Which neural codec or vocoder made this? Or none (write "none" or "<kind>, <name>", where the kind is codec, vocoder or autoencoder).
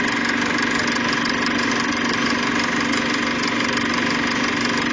none